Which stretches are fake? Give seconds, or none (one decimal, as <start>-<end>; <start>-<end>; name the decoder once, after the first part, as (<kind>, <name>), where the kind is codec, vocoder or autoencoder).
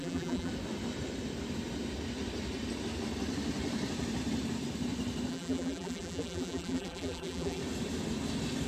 0.0-0.5 (vocoder, BigVGAN v2); 5.3-7.6